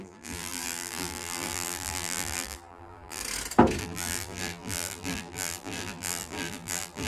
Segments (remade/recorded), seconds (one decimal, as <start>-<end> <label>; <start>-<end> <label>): 0.0-3.2 remade; 3.2-3.8 recorded; 3.8-7.1 remade